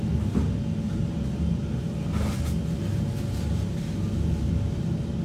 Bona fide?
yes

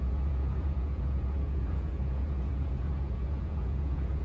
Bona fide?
no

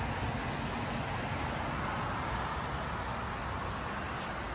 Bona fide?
yes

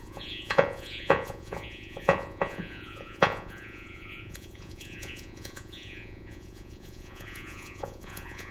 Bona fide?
no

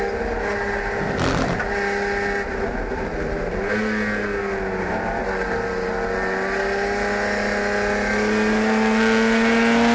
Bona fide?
yes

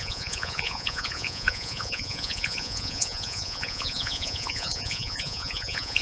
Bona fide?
no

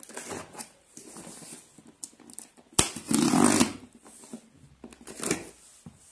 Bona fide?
yes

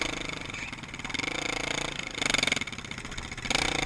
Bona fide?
yes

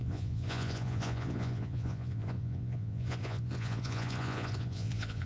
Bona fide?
no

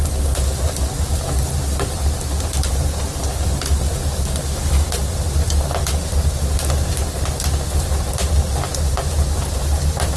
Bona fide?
yes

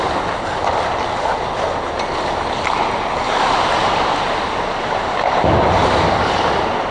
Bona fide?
yes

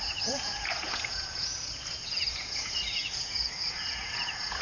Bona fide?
no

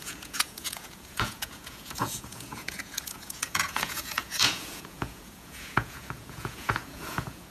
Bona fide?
no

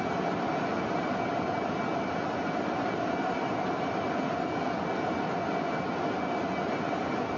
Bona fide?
yes